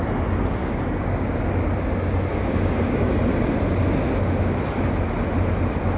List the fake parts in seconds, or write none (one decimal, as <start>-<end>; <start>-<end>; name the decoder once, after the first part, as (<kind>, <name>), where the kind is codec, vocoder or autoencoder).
0.6-1.4 (codec, DAC); 2.3-3.1